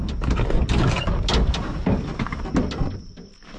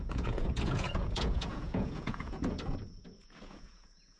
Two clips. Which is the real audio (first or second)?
first